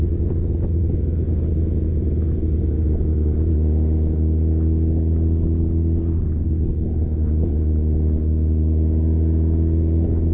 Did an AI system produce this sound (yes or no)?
no